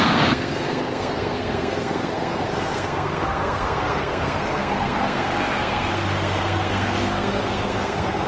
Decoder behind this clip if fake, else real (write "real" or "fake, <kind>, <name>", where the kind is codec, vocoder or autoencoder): fake, codec, SNAC